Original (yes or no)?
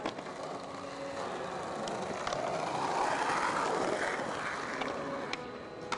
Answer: yes